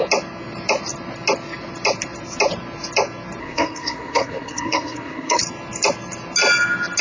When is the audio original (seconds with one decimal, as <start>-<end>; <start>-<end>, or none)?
0.0-3.4; 5.4-7.0